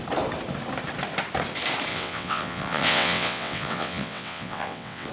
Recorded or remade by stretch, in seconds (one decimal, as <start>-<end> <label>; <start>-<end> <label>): 0.0-1.9 recorded; 1.9-5.1 remade